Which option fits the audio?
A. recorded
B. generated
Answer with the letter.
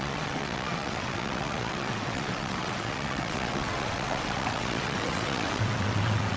B